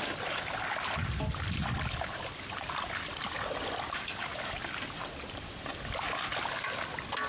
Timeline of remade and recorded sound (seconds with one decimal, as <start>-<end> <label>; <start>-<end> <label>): 0.0-1.3 recorded; 1.3-5.7 remade; 5.7-7.3 recorded